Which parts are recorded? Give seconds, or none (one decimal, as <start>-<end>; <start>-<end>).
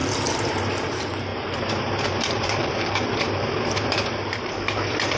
none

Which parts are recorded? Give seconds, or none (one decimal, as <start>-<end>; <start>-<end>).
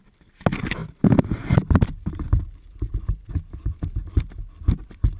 0.0-5.2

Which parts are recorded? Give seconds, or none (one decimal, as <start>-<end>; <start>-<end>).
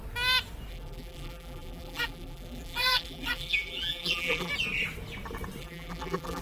0.0-0.7; 4.5-5.6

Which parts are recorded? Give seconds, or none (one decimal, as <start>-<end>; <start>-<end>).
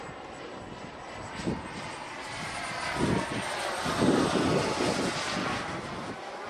0.0-5.4; 6.1-6.5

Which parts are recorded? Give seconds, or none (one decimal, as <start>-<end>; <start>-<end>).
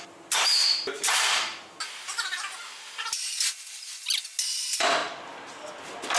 0.0-0.6; 2.4-6.2